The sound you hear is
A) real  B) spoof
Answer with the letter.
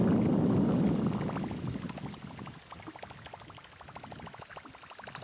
A